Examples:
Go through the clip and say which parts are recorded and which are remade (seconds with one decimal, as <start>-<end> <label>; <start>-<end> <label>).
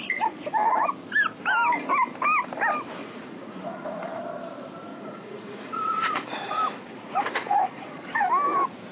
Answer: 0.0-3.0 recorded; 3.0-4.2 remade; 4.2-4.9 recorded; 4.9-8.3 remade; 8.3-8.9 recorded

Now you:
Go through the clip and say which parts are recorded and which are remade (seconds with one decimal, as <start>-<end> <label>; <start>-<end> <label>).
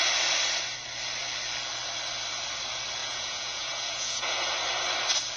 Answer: 0.0-3.0 recorded; 3.0-4.4 remade; 4.4-5.4 recorded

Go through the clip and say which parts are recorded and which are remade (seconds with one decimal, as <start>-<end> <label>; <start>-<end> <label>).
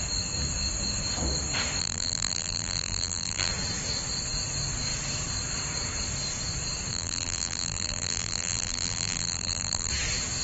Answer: 0.0-1.8 recorded; 1.8-3.5 remade; 3.5-6.9 recorded; 6.9-9.9 remade; 9.9-10.4 recorded